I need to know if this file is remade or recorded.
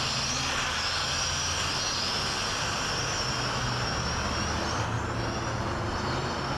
recorded